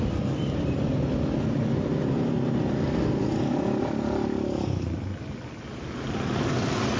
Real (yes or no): yes